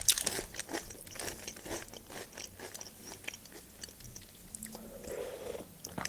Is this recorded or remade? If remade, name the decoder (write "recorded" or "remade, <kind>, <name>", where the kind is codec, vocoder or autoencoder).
recorded